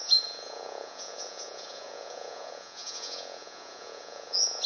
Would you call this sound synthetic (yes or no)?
yes